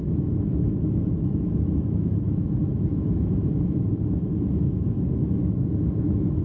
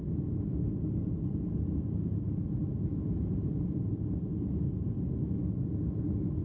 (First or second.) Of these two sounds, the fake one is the first